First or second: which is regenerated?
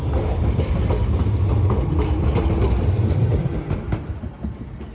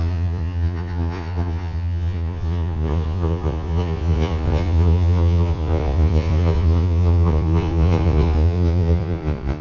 second